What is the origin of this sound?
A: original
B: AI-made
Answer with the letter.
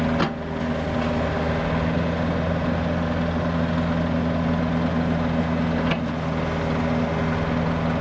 A